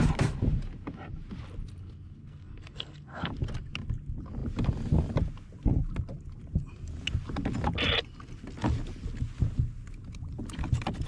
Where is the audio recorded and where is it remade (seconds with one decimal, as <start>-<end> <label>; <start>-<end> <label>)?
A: 0.0-2.2 recorded; 2.2-3.3 remade; 3.3-11.1 recorded